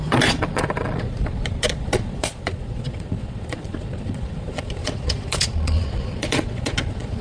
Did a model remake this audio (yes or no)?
yes